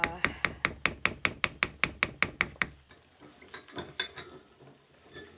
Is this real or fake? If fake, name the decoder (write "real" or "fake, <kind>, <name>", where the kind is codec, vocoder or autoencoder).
real